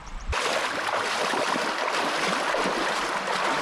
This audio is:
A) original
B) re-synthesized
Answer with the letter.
A